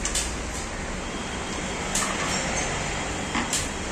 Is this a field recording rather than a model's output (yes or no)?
yes